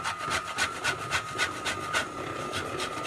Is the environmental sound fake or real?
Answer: real